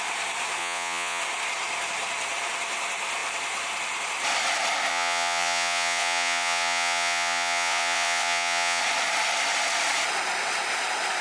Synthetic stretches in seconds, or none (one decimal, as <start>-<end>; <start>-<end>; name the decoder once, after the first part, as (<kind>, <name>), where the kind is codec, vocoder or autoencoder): 0.6-1.2 (vocoder, Vocos); 4.9-8.8